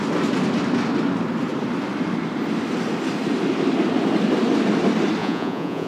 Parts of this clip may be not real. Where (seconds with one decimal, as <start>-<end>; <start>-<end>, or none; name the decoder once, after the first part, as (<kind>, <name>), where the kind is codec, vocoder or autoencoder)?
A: 5.2-5.9 (vocoder, Vocos)